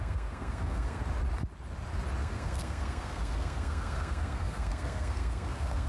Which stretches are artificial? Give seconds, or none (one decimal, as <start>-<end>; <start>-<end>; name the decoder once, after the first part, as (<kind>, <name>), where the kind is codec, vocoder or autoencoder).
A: 0.0-1.0 (codec, SNAC); 2.2-5.9